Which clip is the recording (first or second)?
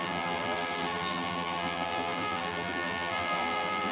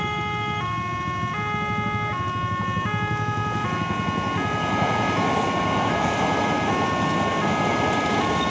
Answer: second